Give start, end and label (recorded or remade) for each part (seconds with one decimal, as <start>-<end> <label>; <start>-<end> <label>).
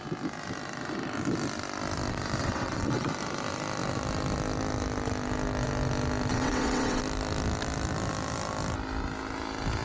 0.0-2.4 recorded; 2.4-3.1 remade; 3.1-6.3 recorded; 6.3-7.0 remade; 7.0-9.8 recorded